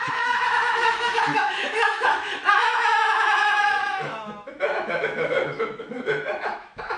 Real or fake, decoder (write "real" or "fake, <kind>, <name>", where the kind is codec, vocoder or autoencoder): fake, autoencoder, DAC-VAE